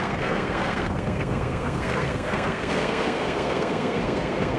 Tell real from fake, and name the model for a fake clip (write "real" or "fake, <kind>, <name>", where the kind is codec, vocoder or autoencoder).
fake, codec, SNAC